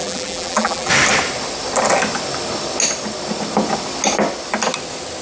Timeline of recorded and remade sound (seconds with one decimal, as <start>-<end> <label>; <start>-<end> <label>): 0.0-0.9 remade; 0.9-5.2 recorded